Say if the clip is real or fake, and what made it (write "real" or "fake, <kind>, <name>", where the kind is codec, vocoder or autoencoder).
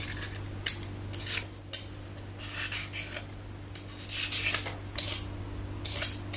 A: real